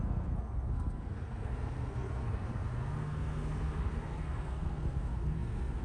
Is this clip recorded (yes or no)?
no